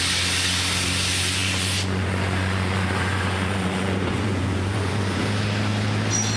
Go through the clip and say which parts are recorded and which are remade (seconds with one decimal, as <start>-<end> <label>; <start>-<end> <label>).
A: 0.0-1.4 recorded; 1.4-5.2 remade; 5.2-6.4 recorded